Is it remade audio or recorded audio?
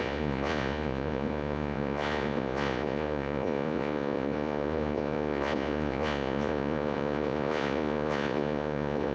remade